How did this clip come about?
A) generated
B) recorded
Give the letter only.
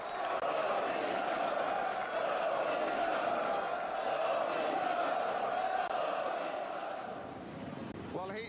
B